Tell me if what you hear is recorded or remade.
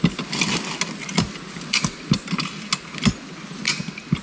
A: recorded